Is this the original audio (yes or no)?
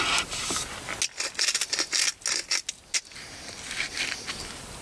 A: yes